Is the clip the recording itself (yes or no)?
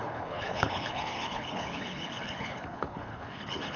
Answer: no